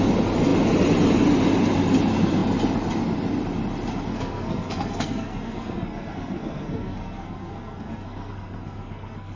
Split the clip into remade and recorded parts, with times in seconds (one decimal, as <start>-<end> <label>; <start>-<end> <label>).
0.0-4.1 recorded; 4.1-9.4 remade